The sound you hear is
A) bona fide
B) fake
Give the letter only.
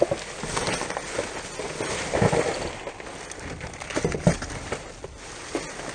A